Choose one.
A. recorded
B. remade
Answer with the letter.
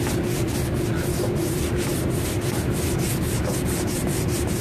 A